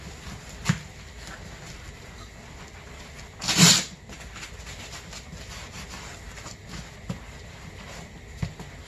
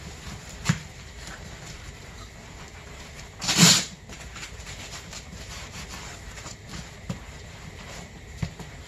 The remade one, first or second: second